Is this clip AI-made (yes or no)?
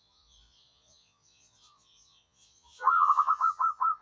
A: yes